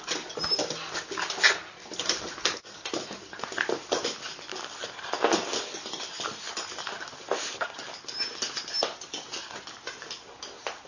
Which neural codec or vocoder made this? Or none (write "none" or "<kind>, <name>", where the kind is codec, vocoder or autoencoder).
none